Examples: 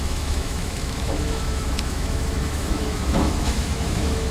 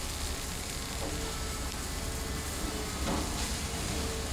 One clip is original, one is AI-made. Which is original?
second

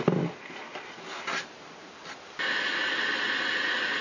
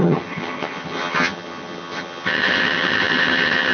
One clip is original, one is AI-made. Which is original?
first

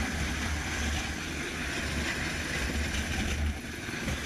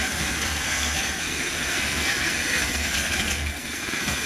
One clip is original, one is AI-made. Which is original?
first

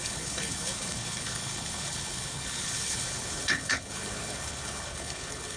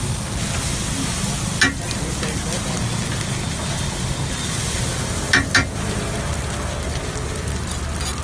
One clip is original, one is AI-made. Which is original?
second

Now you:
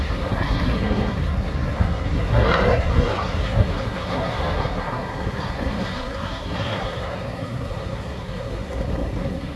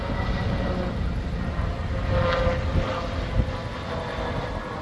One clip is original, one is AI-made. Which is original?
second